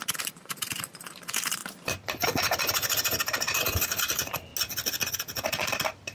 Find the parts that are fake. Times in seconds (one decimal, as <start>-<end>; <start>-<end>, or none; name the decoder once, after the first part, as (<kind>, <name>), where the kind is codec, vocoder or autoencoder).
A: 0.0-4.5 (vocoder, BigVGAN v2); 5.1-6.1

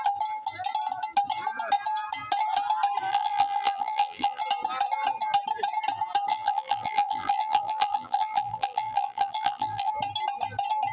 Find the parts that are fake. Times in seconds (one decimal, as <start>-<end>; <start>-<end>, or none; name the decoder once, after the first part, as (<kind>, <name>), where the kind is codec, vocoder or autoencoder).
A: 3.1-4.4 (vocoder, BigVGAN v2); 6.3-9.9

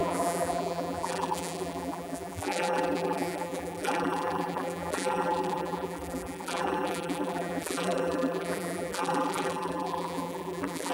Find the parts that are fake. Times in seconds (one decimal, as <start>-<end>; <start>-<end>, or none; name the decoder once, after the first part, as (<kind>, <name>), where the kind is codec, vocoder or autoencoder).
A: 0.0-10.9 (vocoder, BigVGAN v2)

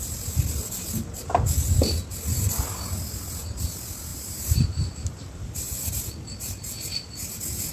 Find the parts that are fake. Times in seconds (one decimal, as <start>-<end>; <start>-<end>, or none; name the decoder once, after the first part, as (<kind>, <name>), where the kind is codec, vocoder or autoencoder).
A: 4.1-5.8 (vocoder, BigVGAN v2)

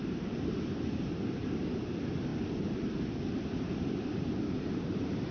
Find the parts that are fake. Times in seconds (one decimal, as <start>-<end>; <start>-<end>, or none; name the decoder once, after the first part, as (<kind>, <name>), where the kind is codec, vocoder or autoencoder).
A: 0.0-2.3 (vocoder, BigVGAN v2); 3.5-5.3

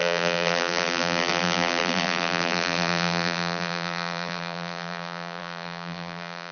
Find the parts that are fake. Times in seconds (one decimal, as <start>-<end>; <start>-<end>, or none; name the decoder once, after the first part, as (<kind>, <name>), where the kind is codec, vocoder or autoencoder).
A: 0.0-6.5 (vocoder, BigVGAN v2)

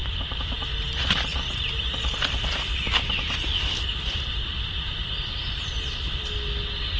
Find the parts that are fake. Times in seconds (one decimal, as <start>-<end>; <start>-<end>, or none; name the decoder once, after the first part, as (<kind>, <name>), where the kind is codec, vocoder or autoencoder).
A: 0.0-0.9 (vocoder, BigVGAN v2); 1.3-5.5

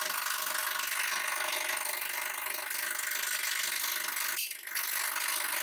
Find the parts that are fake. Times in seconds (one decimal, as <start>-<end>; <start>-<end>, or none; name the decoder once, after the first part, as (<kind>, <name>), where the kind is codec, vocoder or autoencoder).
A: none